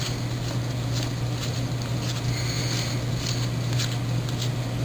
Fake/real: real